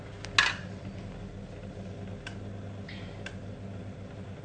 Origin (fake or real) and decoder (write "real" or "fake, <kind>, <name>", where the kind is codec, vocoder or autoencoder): real